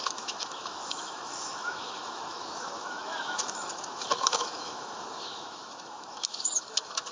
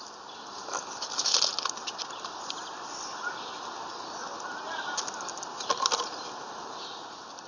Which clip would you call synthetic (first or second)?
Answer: first